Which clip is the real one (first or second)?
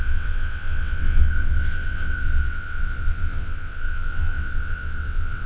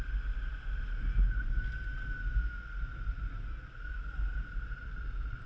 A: second